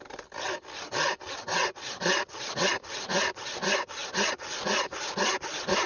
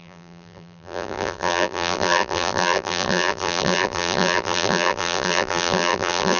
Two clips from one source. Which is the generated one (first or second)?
second